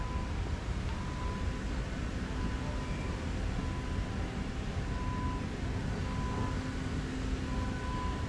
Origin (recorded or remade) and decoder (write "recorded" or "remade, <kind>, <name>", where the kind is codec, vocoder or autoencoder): recorded